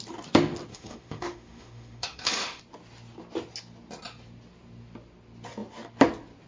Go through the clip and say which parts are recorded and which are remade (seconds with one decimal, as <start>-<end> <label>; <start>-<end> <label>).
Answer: 0.0-0.7 recorded; 0.7-2.6 remade; 2.6-6.5 recorded